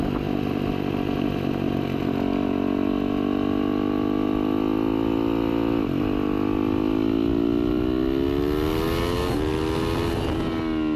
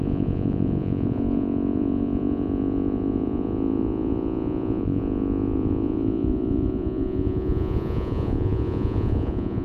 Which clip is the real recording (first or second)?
first